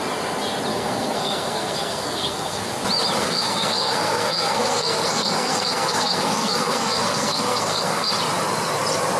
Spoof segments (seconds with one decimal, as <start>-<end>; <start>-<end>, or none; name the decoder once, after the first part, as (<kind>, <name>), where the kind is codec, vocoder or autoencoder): 0.7-2.7 (codec, SNAC); 3.2-8.1